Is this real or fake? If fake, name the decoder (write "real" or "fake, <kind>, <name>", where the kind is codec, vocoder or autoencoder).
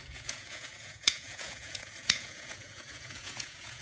fake, vocoder, Vocos